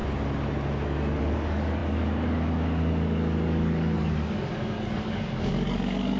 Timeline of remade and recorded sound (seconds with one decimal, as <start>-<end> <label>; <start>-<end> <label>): 0.0-1.2 recorded; 1.2-6.2 remade

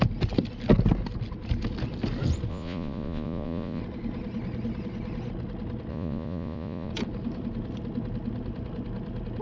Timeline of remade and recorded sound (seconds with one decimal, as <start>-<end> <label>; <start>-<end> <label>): 0.0-2.5 recorded; 2.5-3.8 remade; 3.8-5.9 recorded; 5.9-6.9 remade; 6.9-9.4 recorded

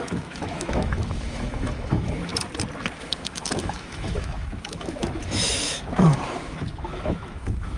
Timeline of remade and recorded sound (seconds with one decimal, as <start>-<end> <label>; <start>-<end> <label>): 0.0-2.3 remade; 2.3-3.0 recorded; 3.0-7.8 remade

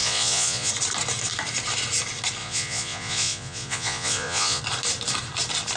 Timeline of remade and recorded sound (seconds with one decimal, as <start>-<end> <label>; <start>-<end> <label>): 0.0-0.7 remade; 0.7-2.4 recorded; 2.4-4.6 remade; 4.6-5.8 recorded

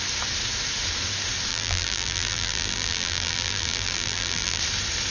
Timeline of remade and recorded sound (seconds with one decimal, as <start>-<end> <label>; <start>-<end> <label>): 0.0-1.5 recorded; 1.5-4.6 remade; 4.6-5.1 recorded

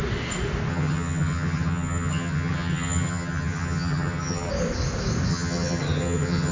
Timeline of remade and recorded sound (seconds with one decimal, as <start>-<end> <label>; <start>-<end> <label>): 0.0-0.7 recorded; 0.7-4.5 remade; 4.5-5.3 recorded; 5.3-6.5 remade